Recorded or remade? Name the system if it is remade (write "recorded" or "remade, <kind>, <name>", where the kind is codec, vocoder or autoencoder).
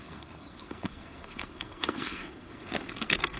remade, codec, SNAC